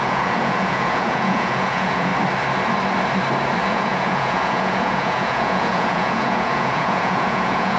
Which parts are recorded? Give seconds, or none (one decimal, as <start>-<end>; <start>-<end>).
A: 2.1-3.7